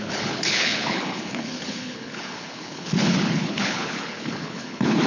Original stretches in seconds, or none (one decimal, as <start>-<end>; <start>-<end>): none